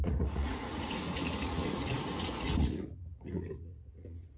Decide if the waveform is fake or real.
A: fake